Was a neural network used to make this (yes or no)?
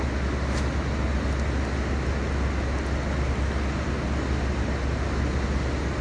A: no